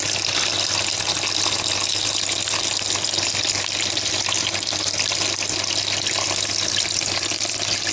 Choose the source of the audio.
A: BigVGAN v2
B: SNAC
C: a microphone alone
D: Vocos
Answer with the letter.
C